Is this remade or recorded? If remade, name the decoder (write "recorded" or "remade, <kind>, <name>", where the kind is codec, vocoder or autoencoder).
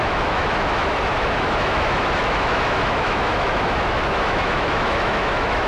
remade, autoencoder, DAC-VAE